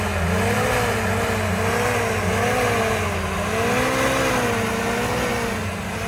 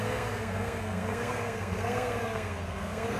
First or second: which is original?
first